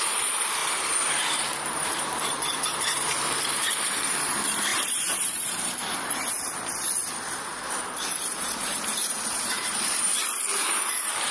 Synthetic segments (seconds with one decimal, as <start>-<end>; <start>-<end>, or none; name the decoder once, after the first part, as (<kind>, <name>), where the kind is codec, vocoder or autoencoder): 0.0-0.6 (vocoder, BigVGAN v2); 1.3-7.0; 8.2-10.1; 10.6-11.3